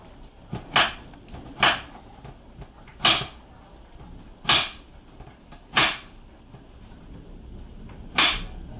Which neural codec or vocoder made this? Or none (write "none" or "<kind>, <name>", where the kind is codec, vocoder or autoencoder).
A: none